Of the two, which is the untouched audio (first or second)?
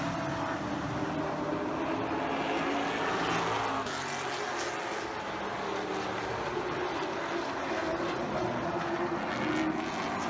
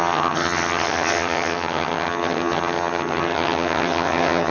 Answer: first